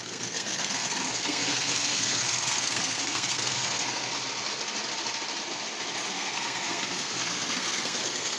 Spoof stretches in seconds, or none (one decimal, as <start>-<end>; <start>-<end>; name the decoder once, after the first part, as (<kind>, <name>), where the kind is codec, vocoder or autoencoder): 0.0-4.1 (codec, SNAC); 6.1-8.4